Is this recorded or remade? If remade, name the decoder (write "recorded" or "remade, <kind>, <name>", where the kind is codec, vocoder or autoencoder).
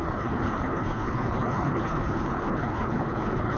remade, codec, HILCodec